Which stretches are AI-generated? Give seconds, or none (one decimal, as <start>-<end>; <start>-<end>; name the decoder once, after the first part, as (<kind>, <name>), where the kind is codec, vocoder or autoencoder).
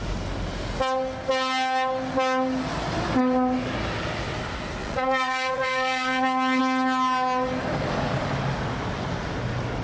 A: 4.8-6.6 (vocoder, Vocos)